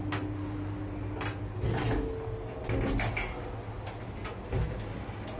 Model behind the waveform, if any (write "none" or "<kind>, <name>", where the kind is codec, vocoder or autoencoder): none